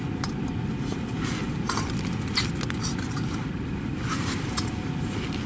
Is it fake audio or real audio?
real